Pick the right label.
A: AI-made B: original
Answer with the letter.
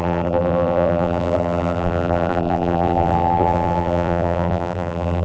A